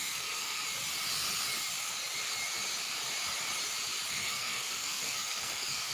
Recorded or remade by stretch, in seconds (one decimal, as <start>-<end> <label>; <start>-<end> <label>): 0.0-0.6 remade; 0.6-4.1 recorded; 4.1-5.9 remade